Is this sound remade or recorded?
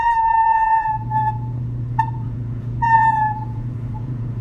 remade